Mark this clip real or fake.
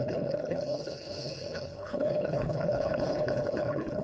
fake